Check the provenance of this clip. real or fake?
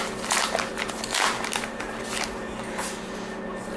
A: real